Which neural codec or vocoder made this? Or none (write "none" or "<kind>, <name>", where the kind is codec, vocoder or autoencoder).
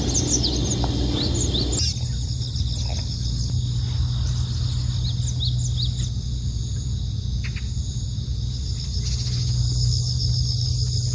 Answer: none